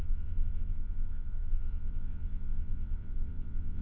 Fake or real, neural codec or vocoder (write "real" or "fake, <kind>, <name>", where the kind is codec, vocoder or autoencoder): fake, vocoder, WaveNeXt